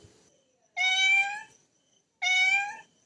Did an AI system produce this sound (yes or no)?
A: no